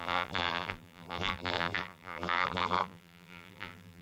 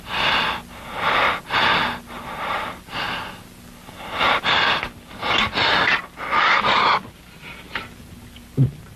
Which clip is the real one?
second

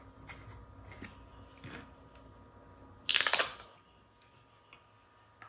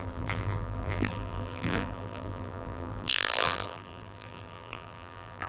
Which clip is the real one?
first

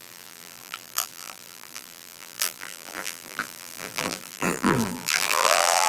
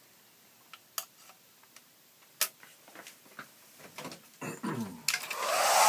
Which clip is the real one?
second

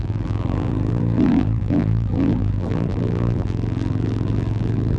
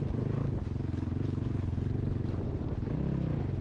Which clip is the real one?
second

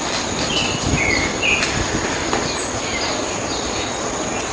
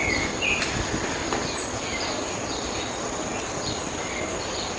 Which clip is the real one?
first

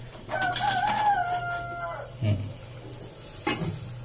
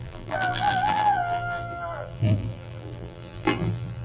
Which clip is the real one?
first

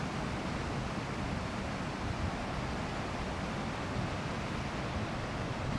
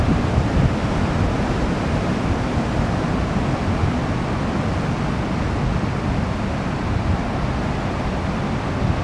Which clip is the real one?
second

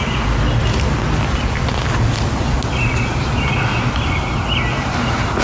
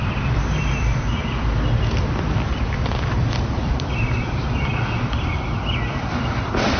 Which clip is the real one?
first